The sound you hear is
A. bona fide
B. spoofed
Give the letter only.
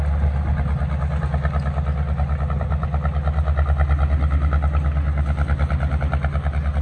A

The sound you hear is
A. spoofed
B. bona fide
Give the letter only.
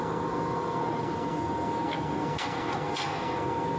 A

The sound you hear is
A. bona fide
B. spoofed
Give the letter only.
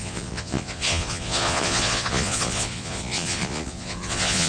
B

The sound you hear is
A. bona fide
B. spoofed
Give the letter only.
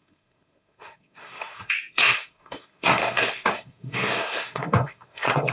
B